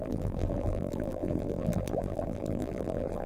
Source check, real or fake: fake